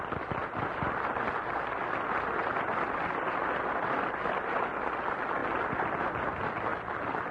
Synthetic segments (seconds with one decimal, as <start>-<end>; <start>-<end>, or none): 6.7-7.3